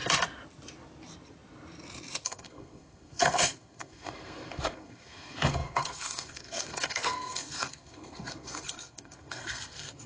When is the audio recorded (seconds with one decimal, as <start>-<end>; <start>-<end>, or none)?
0.0-2.2